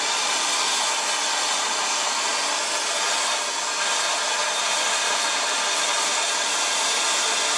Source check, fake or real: real